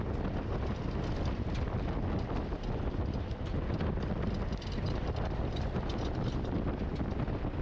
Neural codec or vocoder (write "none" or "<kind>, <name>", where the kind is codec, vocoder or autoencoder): none